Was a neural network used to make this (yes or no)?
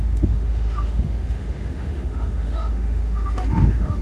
yes